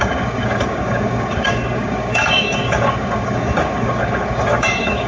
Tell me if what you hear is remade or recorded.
remade